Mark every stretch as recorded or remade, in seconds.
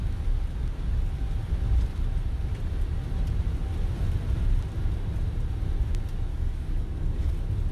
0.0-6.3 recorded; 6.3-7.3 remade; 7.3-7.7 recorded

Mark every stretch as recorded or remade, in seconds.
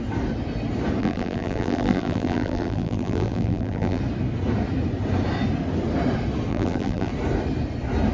0.0-1.0 recorded; 1.0-4.0 remade; 4.0-6.5 recorded; 6.5-7.1 remade; 7.1-8.1 recorded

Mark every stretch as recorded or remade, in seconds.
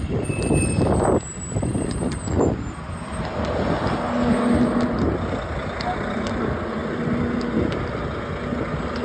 0.0-9.0 recorded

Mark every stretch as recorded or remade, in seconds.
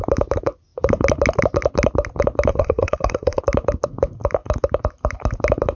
0.0-2.5 recorded; 2.5-3.4 remade; 3.4-5.7 recorded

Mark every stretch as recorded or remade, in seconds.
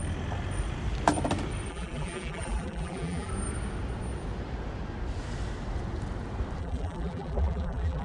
0.0-1.7 recorded; 1.7-3.3 remade; 3.3-6.6 recorded; 6.6-8.0 remade